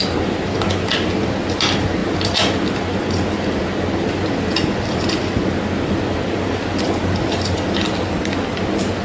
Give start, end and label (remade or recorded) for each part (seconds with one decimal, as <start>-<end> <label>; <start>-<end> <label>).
0.0-9.0 recorded